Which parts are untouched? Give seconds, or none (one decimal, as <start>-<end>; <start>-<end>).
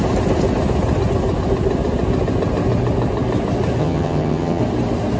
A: 0.0-3.8; 4.6-5.2